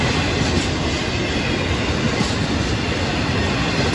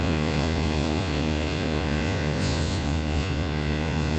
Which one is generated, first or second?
second